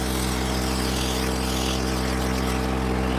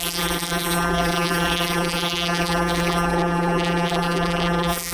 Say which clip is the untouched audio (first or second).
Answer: first